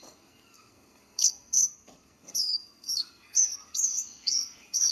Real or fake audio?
fake